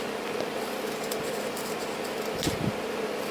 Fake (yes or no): yes